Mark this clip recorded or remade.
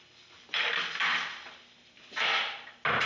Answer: recorded